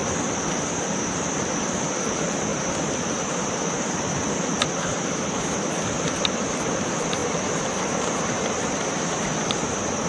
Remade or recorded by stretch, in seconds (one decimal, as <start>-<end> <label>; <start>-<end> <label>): 0.0-1.1 recorded; 1.1-10.1 remade